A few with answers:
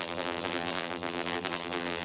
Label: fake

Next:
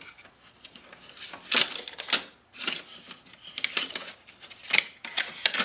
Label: fake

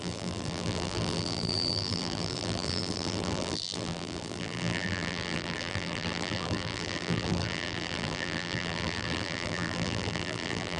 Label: fake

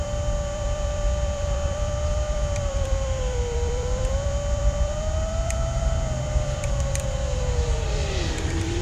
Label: fake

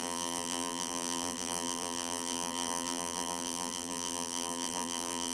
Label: fake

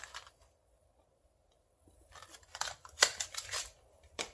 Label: fake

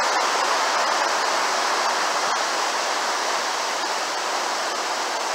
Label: real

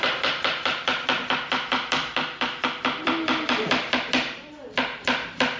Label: fake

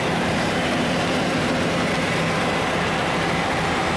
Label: fake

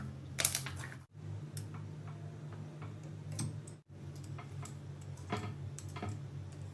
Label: real